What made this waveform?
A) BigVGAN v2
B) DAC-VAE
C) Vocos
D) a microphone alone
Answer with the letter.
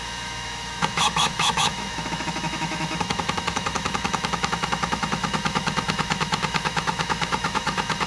B